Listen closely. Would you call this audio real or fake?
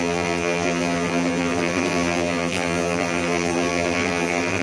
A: fake